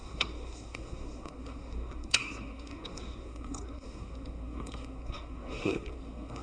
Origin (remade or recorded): remade